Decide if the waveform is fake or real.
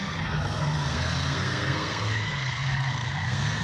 fake